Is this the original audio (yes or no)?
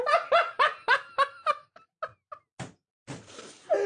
yes